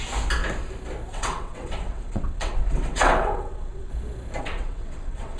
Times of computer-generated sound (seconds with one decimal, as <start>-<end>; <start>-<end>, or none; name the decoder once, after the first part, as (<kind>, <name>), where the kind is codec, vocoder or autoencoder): 1.1-3.9 (vocoder, WaveNeXt); 4.4-5.4